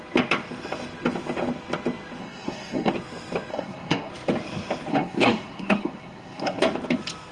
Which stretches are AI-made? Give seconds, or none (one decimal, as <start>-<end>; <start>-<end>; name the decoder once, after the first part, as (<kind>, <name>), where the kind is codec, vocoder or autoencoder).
2.2-2.9 (codec, SNAC); 3.5-4.1; 4.9-6.6